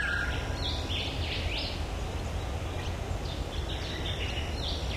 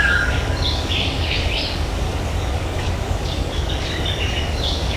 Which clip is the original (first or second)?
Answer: first